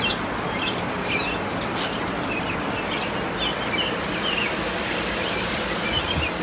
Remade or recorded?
recorded